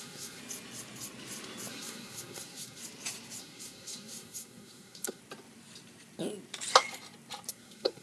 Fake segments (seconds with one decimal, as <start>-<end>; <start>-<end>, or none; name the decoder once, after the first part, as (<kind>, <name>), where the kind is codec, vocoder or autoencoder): 0.0-0.4 (codec, SNAC); 1.7-2.8; 3.4-5.2; 7.5-8.0